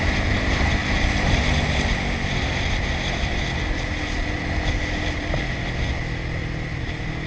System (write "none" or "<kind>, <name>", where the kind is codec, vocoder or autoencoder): none